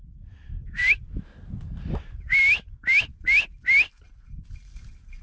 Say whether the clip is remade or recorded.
recorded